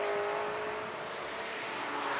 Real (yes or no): yes